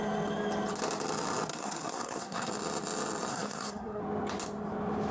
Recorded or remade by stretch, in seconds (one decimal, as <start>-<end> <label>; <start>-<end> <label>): 0.0-1.5 recorded; 1.5-2.5 remade; 2.5-3.3 recorded; 3.3-4.0 remade; 4.0-5.1 recorded